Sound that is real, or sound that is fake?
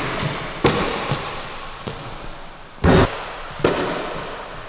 real